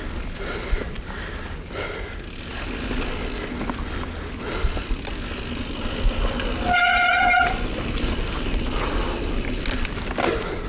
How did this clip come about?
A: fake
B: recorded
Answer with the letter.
B